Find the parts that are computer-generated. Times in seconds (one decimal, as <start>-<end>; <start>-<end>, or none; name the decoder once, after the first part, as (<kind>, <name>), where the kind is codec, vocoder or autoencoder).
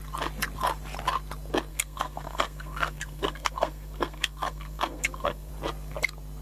1.7-5.5 (codec, SNAC)